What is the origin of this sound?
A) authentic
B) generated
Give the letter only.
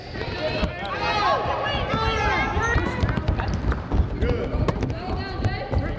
A